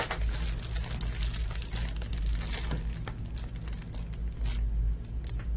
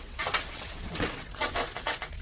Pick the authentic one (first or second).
first